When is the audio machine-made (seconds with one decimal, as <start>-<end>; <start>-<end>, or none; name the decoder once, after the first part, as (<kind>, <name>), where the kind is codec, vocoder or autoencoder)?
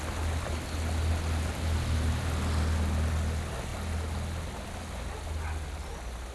none